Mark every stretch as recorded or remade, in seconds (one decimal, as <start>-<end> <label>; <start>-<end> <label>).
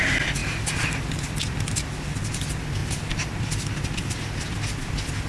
0.0-5.3 recorded